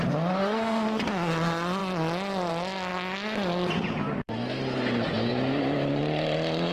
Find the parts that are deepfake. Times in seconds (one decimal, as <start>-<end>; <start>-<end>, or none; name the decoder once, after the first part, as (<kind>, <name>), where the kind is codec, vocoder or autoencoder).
0.4-1.0 (codec, SNAC)